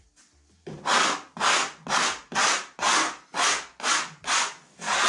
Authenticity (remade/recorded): recorded